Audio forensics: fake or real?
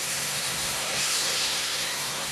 fake